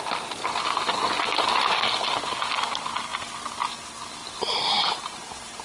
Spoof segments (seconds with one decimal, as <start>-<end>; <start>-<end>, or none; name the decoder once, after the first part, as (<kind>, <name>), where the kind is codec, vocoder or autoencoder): none